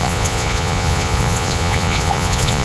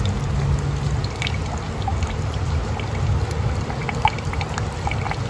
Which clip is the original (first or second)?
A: second